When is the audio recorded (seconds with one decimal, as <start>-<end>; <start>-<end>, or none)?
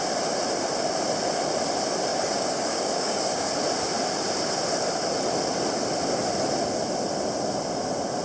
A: 0.0-2.1; 3.5-8.2